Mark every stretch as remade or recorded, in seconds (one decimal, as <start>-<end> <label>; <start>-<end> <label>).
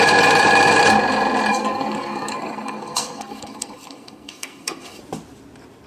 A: 0.0-1.5 recorded; 1.5-5.0 remade; 5.0-5.9 recorded